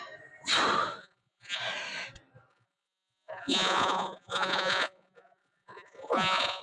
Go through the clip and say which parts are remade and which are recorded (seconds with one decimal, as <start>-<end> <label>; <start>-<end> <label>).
0.0-1.0 recorded; 1.0-1.6 remade; 1.6-2.5 recorded; 2.5-6.6 remade